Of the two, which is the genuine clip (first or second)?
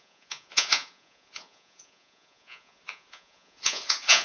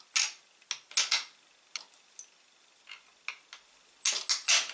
second